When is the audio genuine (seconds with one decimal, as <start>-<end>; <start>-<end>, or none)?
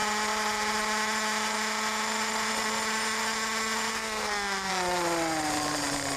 0.0-3.9; 4.7-6.2